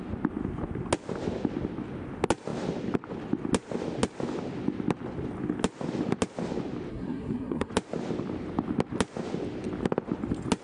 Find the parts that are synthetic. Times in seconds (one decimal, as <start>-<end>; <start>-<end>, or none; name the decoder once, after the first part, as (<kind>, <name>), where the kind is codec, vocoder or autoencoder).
6.9-7.7 (codec, SNAC)